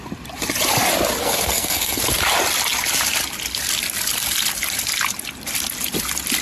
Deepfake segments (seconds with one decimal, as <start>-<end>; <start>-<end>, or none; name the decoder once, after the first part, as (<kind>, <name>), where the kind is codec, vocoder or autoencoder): 1.2-2.0 (codec, SNAC)